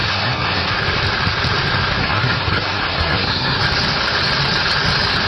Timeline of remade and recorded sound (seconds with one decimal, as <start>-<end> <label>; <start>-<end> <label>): 0.0-0.7 remade; 0.7-2.0 recorded; 2.0-3.6 remade; 3.6-5.3 recorded